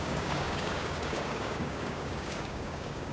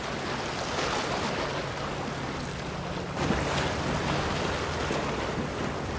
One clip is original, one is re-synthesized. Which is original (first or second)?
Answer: second